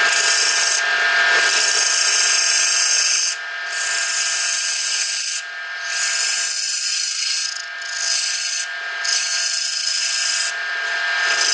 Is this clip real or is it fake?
real